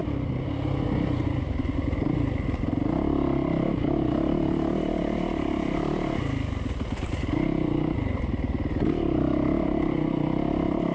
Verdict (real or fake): real